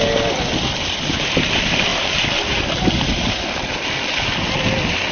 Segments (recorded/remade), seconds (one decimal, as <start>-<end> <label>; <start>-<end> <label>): 0.0-5.1 recorded